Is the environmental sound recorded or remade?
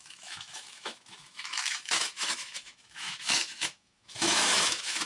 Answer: remade